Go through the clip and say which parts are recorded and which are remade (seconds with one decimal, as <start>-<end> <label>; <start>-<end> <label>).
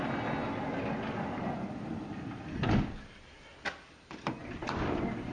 0.0-5.3 recorded